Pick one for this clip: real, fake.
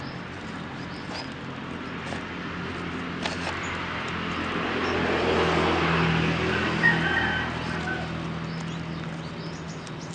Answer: real